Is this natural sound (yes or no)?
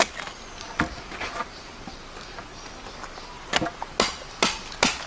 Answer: yes